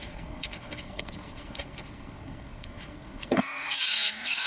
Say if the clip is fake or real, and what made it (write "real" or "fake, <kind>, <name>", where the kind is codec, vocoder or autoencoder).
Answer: fake, codec, SNAC